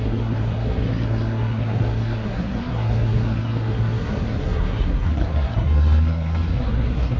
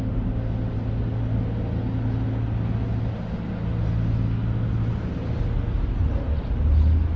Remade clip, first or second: first